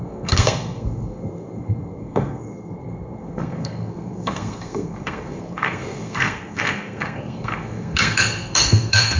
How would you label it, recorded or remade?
remade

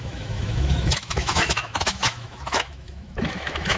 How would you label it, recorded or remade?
remade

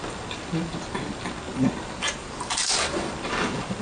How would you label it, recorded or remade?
recorded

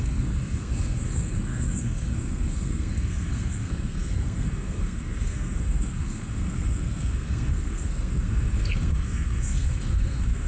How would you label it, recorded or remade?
remade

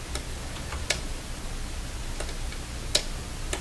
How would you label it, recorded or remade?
recorded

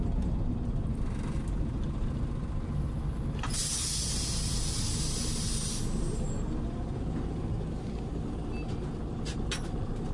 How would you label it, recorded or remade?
recorded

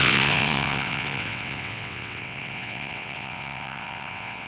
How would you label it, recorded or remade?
remade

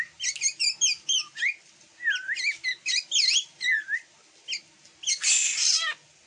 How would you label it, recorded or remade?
recorded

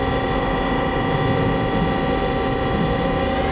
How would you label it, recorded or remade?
recorded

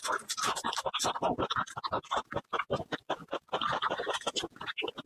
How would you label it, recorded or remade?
recorded